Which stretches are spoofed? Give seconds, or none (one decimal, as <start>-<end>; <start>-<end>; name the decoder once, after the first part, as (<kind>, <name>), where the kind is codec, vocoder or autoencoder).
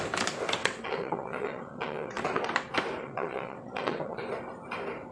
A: 0.6-2.5 (vocoder, WaveNeXt); 3.0-4.2